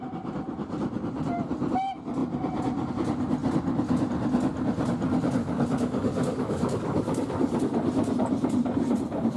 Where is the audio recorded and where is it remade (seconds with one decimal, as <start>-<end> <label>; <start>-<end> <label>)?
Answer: 0.0-5.4 recorded; 5.4-7.6 remade; 7.6-9.4 recorded